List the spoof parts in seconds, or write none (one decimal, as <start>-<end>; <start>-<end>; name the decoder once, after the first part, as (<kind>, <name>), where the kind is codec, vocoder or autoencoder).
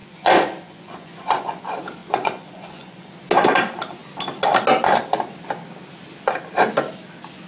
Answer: 0.0-1.6 (vocoder, Vocos); 2.0-3.1